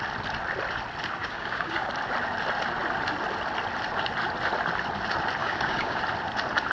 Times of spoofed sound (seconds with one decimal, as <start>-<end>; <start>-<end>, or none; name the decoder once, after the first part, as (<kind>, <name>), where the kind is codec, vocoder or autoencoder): 1.2-1.9 (codec, DAC); 5.4-6.0